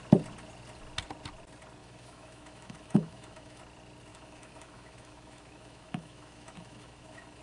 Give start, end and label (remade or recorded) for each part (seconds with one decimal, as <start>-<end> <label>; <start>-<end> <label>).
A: 0.0-1.8 recorded; 1.8-3.6 remade; 3.6-4.1 recorded; 4.1-7.4 remade